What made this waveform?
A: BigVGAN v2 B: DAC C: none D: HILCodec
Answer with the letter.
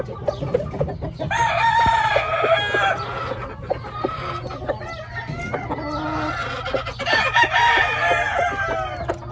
C